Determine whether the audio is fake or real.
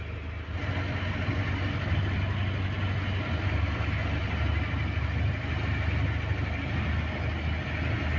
real